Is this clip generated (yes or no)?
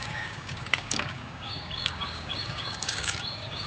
yes